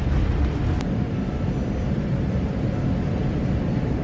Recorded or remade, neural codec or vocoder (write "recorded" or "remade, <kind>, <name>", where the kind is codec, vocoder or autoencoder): recorded